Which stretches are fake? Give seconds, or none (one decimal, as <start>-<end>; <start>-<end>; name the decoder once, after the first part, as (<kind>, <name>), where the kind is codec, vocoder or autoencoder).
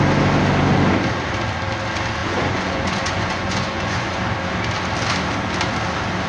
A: 2.2-4.2 (vocoder, Vocos)